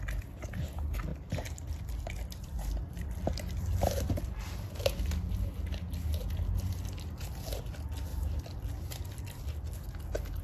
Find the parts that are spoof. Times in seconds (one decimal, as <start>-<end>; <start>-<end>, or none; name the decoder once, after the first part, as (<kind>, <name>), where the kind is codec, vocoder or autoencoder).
1.1-4.7 (vocoder, BigVGAN v2); 8.1-9.4